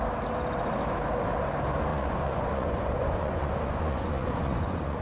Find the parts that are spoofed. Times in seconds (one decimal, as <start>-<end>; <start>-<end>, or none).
1.9-5.0

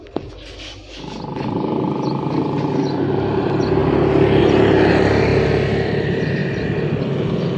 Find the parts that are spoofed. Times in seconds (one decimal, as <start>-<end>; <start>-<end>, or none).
none